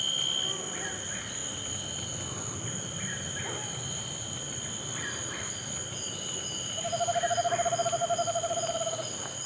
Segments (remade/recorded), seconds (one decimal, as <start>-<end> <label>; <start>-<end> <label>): 0.0-9.5 recorded

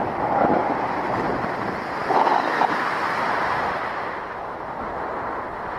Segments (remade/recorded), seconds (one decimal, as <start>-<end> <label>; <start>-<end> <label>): 0.0-0.6 recorded; 0.6-1.3 remade; 1.3-5.8 recorded

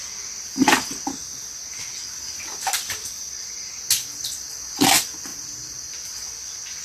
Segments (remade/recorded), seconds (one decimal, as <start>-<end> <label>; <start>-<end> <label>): 0.0-3.0 recorded; 3.0-3.7 remade; 3.7-5.3 recorded; 5.3-5.9 remade; 5.9-6.8 recorded

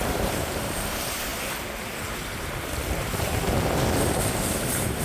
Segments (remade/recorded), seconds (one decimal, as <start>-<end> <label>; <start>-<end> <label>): 0.0-1.3 remade; 1.3-4.3 recorded; 4.3-5.0 remade